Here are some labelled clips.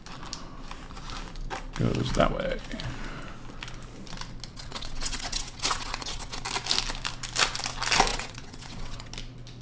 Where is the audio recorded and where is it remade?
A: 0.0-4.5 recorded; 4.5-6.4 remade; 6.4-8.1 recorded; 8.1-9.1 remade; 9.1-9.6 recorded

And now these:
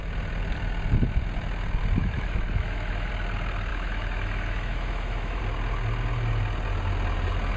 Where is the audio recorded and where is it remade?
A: 0.0-2.0 recorded; 2.0-3.1 remade; 3.1-3.7 recorded; 3.7-5.4 remade; 5.4-7.6 recorded